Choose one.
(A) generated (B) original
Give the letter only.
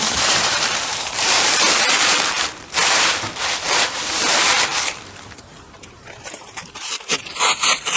A